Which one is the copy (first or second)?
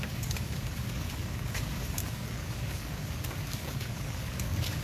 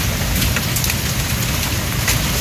first